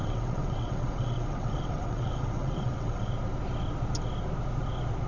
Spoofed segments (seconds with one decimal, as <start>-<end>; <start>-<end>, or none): 0.0-3.1